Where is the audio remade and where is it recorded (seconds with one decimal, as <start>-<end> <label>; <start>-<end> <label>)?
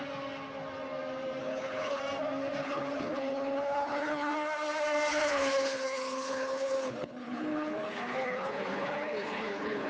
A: 0.0-1.4 recorded; 1.4-2.0 remade; 2.0-2.6 recorded; 2.6-4.3 remade; 4.3-5.1 recorded; 5.1-9.9 remade